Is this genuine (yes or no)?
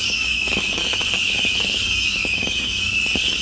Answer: no